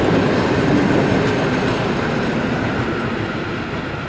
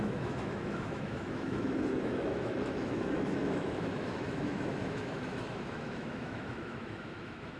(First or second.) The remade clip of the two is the second